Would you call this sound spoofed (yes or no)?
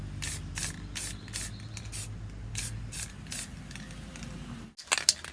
no